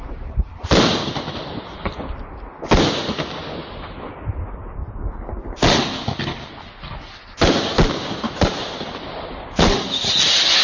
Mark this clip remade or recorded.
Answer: recorded